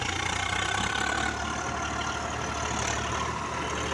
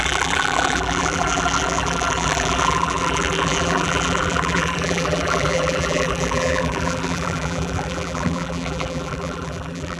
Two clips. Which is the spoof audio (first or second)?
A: second